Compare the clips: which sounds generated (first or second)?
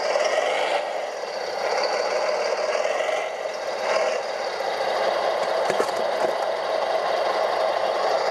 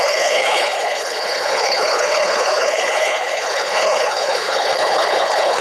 second